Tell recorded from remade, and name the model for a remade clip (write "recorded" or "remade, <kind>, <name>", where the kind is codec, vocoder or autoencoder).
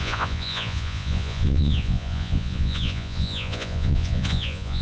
remade, vocoder, Vocos